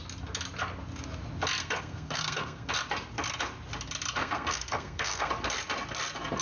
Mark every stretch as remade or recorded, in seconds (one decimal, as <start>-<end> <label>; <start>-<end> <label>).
0.0-1.6 recorded; 1.6-2.7 remade; 2.7-4.2 recorded; 4.2-5.3 remade; 5.3-6.4 recorded